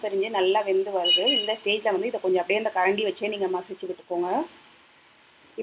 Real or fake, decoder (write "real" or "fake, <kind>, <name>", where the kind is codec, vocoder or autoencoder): real